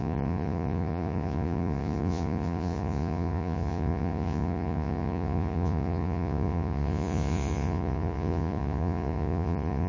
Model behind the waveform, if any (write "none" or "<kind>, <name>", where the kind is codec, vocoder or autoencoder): vocoder, Vocos